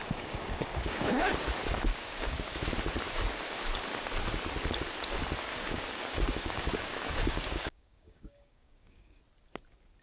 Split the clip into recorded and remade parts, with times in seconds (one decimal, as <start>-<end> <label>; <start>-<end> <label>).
0.0-1.3 remade; 1.3-1.9 recorded; 1.9-2.6 remade; 2.6-5.5 recorded; 5.5-9.2 remade; 9.2-10.0 recorded